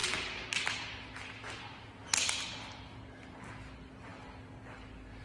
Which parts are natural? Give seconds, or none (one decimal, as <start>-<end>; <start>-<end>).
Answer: 0.0-5.2